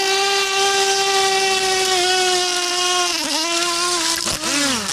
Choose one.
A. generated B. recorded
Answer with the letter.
B